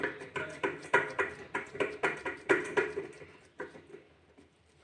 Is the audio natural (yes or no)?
no